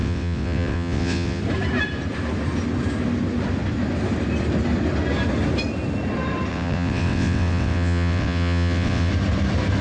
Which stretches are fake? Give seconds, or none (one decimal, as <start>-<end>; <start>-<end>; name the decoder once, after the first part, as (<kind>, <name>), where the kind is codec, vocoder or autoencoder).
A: 0.0-1.4 (vocoder, WaveNeXt); 6.5-9.1